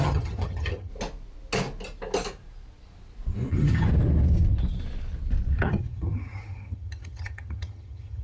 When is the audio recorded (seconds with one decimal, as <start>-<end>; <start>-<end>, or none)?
0.9-3.5; 3.9-5.6